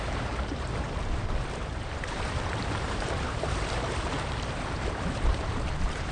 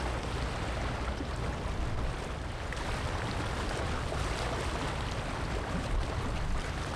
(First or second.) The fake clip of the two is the first